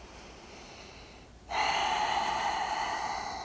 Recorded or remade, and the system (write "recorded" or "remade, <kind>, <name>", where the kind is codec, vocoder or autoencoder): recorded